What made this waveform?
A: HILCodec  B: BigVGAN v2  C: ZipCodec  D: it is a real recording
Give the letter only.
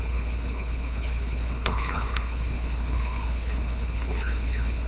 A